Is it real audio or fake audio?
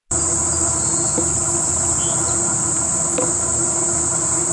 real